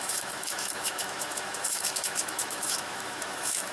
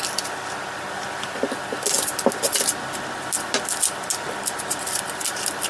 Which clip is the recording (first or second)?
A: second